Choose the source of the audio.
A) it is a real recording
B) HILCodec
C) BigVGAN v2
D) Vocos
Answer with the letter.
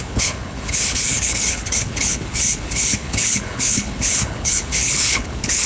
B